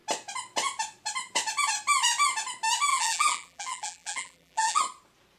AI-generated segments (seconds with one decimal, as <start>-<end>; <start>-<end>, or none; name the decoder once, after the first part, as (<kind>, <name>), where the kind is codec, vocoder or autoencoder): 2.9-4.8 (vocoder, BigVGAN v2)